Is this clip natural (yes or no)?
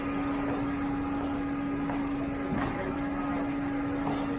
yes